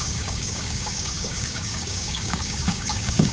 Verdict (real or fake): fake